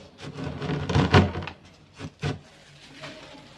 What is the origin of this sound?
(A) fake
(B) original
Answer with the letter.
B